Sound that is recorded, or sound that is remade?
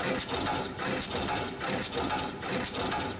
remade